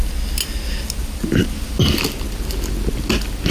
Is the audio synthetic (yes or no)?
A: no